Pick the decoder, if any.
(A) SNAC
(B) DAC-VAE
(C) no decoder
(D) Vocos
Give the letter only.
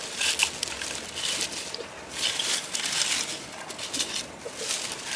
C